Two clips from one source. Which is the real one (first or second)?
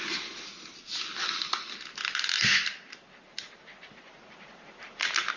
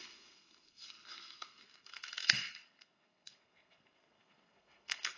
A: first